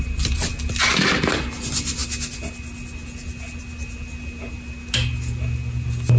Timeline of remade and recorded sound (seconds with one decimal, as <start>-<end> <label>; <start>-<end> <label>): 0.0-6.2 recorded